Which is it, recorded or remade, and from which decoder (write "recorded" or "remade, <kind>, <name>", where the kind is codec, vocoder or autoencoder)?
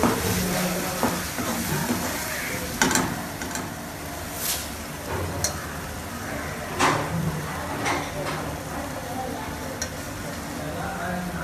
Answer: recorded